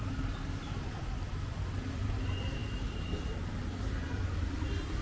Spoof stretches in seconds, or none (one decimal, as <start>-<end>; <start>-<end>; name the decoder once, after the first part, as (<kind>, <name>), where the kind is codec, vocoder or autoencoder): none